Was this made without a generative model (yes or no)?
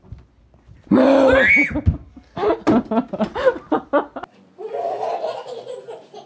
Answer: yes